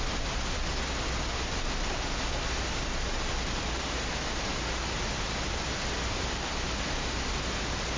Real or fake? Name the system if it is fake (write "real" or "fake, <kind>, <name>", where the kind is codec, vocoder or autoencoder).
real